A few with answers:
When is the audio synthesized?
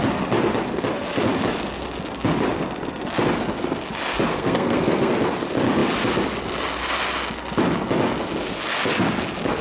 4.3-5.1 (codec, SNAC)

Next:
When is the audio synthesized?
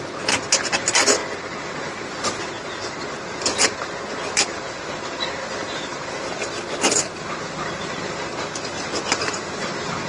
none